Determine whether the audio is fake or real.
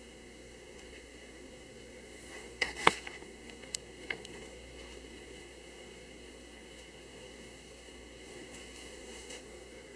fake